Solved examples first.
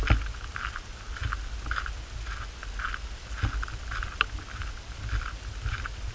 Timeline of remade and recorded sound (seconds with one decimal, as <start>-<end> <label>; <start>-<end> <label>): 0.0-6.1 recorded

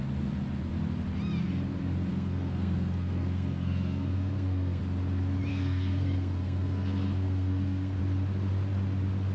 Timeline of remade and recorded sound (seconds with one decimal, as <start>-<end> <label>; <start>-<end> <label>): 0.0-2.1 recorded; 2.1-4.8 remade; 4.8-5.5 recorded; 5.5-8.0 remade; 8.0-9.3 recorded

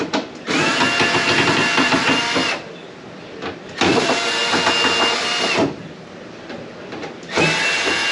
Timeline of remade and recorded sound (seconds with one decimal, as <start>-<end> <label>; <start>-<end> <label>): 0.0-8.1 recorded

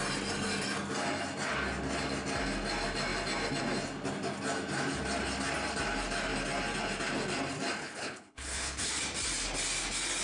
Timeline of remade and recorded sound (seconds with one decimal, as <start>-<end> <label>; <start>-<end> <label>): 0.0-7.8 recorded; 7.8-8.9 remade; 8.9-10.2 recorded

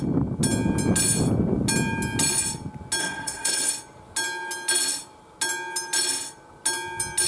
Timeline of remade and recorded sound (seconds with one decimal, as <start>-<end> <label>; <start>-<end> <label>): 0.0-3.0 recorded; 3.0-3.7 remade; 3.7-7.3 recorded

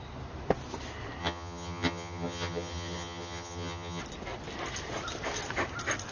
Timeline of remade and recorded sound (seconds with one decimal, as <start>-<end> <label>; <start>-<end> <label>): 0.0-1.2 recorded; 1.2-4.0 remade; 4.0-6.1 recorded

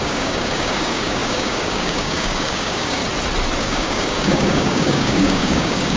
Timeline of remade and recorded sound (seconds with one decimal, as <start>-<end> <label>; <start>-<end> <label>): 0.0-3.0 remade; 3.0-3.6 recorded; 3.6-6.0 remade